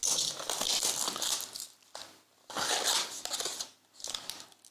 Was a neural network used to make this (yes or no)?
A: no